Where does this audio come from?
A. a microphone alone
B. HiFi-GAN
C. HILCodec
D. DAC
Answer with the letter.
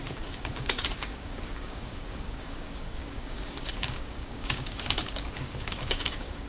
D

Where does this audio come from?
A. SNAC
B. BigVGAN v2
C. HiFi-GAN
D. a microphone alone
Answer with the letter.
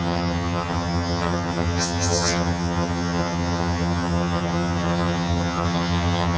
C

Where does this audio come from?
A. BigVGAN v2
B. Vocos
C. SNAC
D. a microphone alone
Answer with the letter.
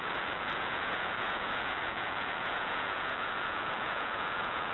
B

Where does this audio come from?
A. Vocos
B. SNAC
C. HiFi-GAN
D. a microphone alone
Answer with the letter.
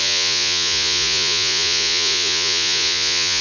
A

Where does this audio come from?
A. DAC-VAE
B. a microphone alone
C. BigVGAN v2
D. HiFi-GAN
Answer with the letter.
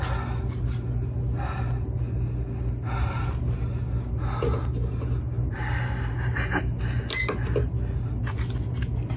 B